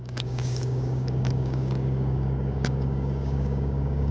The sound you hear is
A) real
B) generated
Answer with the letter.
B